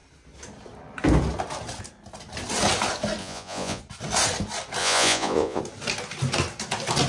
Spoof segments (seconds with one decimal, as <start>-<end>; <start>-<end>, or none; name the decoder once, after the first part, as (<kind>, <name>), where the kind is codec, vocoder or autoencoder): 3.2-3.8 (vocoder, Vocos); 4.8-5.6